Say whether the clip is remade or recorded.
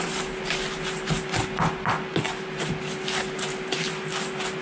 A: recorded